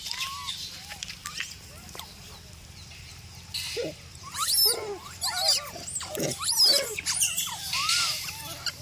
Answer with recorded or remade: recorded